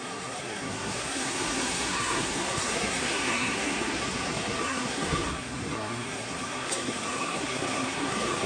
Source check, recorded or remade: remade